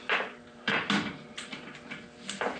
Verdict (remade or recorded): remade